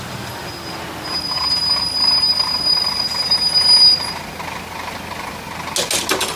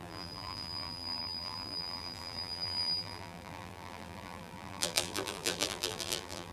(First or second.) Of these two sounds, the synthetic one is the second